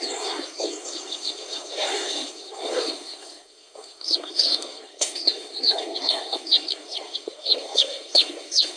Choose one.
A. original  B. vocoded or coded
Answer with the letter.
B